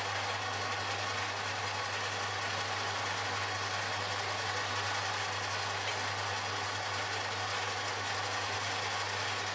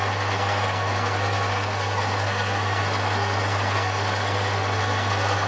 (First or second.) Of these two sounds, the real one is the first